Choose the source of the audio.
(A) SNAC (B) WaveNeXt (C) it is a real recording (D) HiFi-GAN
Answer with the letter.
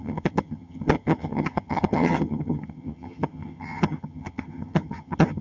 D